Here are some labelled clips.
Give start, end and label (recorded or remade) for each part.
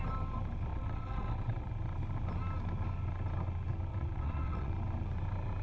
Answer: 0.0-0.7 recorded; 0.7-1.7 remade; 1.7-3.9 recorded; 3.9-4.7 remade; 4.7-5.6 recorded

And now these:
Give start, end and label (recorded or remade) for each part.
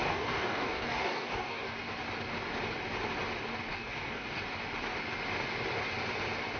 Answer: 0.0-1.7 remade; 1.7-3.7 recorded; 3.7-4.4 remade; 4.4-6.6 recorded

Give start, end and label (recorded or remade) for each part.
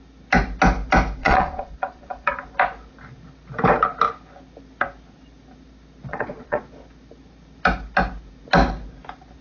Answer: 0.0-1.2 recorded; 1.2-2.3 remade; 2.3-6.1 recorded; 6.1-6.6 remade; 6.6-9.4 recorded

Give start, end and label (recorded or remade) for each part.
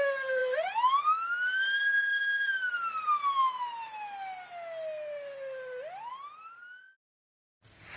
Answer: 0.0-8.0 recorded